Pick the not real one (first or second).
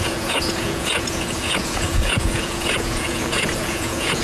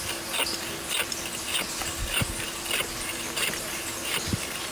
first